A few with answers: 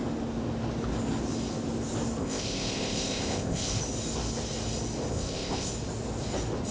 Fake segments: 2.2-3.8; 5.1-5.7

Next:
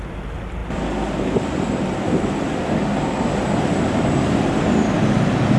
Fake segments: none

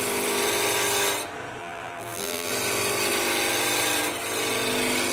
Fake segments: 1.6-2.5

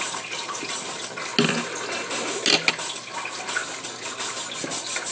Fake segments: 0.0-1.3; 2.7-3.6; 4.6-5.1

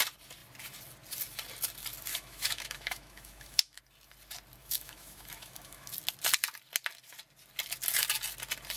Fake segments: 2.1-3.8; 4.6-5.9

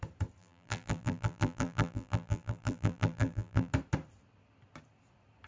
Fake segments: 0.4-3.7